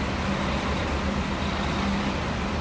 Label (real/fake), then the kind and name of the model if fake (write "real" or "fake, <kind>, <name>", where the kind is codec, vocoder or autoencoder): real